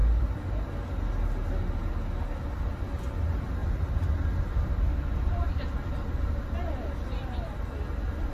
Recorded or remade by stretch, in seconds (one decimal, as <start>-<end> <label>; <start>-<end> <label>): 0.0-0.7 remade; 0.7-3.6 recorded; 3.6-7.4 remade; 7.4-8.3 recorded